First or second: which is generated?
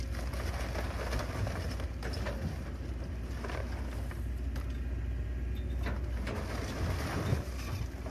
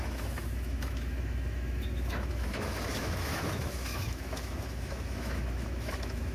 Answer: second